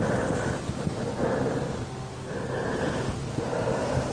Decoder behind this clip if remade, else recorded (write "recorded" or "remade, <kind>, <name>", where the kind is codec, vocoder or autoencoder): recorded